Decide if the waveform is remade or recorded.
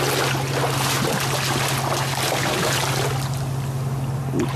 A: recorded